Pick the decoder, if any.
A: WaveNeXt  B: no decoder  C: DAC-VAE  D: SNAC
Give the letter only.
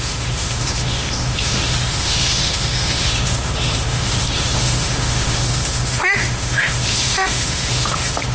C